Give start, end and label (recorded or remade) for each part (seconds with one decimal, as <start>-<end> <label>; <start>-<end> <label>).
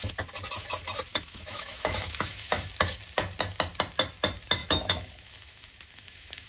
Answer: 0.0-1.1 recorded; 1.1-2.7 remade; 2.7-4.6 recorded; 4.6-6.5 remade